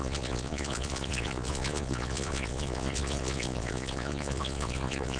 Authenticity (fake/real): fake